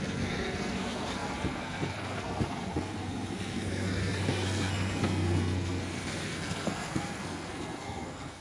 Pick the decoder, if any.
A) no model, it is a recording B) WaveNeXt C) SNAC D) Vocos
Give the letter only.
C